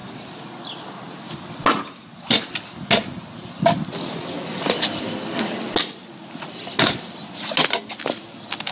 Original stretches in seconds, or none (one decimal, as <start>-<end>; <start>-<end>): 0.0-8.7